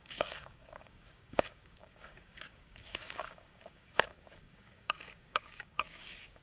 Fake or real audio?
fake